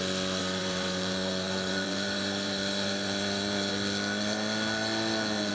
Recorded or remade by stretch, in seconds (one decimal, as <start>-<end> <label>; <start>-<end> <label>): 0.0-0.4 recorded; 0.4-3.7 remade; 3.7-5.5 recorded